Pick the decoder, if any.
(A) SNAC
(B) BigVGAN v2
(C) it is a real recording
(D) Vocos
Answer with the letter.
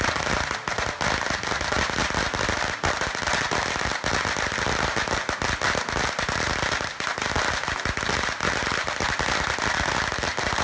C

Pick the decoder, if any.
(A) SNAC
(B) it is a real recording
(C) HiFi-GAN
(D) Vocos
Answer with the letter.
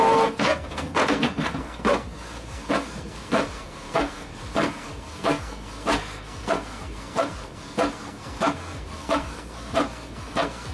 A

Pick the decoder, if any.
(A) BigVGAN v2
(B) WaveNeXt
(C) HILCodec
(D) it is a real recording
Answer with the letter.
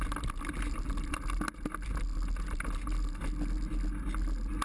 D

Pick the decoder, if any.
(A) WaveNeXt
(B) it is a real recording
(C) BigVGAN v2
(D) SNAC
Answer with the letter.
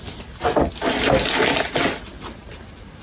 B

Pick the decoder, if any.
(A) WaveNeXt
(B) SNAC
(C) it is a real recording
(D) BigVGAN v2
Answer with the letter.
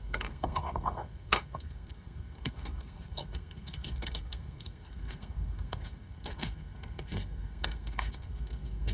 B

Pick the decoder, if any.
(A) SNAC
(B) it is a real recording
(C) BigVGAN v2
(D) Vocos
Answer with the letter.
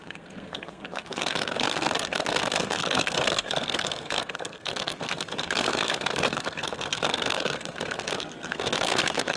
A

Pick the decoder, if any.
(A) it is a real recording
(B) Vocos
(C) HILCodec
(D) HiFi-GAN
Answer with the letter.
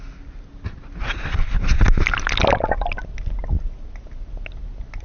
A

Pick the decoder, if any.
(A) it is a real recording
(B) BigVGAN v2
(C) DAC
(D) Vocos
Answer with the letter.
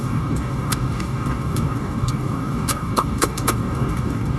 C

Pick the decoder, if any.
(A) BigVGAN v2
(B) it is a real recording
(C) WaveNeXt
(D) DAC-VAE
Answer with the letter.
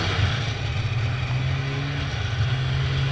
B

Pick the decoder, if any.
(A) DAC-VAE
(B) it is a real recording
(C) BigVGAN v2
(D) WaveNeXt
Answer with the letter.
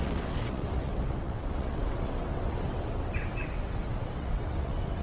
D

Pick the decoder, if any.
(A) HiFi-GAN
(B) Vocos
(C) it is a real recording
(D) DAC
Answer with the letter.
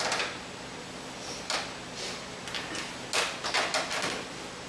C